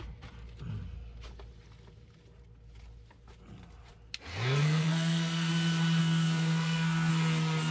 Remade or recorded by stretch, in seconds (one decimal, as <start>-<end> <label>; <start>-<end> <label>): 0.0-4.3 recorded; 4.3-5.5 remade; 5.5-6.0 recorded; 6.0-7.1 remade; 7.1-7.7 recorded